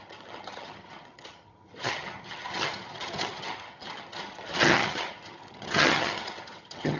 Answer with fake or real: fake